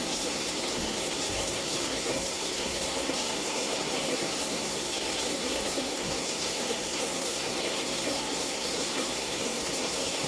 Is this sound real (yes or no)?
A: no